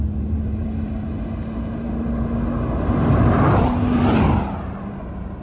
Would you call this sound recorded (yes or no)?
no